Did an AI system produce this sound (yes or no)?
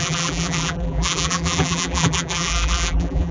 yes